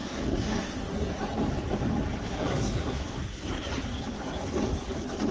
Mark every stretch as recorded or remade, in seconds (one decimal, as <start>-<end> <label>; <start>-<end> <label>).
0.0-1.2 remade; 1.2-2.3 recorded; 2.3-3.7 remade; 3.7-5.3 recorded